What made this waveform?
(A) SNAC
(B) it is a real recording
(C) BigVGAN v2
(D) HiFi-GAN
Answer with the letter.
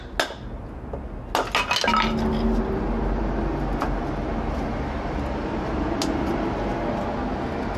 B